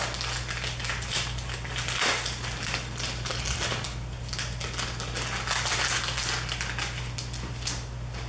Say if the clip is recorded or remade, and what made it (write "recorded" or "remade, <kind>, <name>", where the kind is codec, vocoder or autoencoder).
recorded